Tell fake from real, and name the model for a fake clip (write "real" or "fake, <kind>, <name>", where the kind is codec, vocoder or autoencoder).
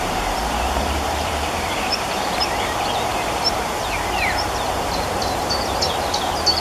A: fake, vocoder, BigVGAN v2